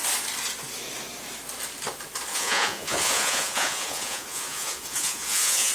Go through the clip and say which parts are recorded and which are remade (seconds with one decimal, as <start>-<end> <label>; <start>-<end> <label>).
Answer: 0.0-2.3 recorded; 2.3-5.7 remade